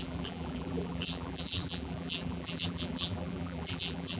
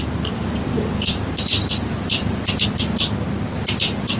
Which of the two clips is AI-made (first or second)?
first